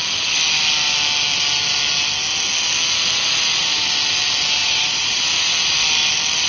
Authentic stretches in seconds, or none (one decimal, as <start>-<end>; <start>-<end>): 0.0-4.6; 5.2-6.5